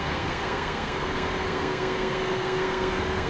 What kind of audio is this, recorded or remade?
remade